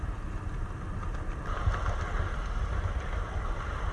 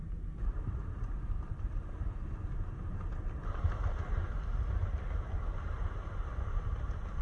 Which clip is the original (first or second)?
first